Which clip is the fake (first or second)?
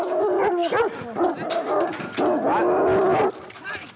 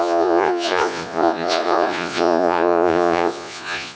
second